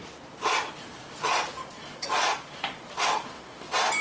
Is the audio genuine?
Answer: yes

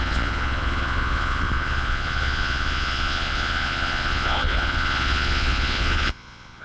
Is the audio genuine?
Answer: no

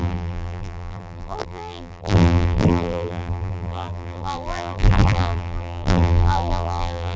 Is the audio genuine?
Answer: no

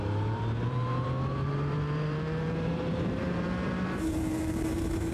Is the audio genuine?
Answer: no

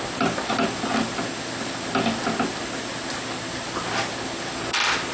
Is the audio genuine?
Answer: yes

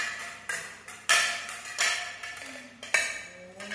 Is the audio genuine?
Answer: yes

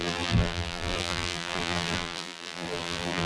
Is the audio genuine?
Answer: no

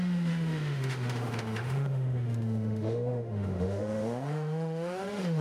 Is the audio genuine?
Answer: no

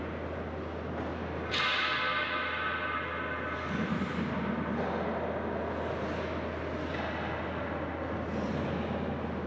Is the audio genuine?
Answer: yes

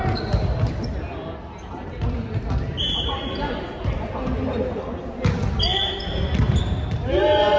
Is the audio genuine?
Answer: yes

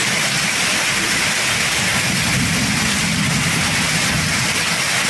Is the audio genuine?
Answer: yes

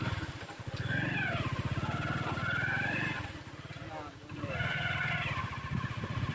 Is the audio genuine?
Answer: yes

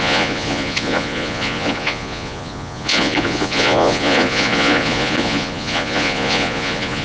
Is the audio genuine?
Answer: no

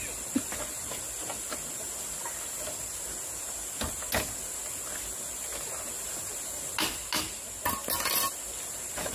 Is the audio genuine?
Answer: yes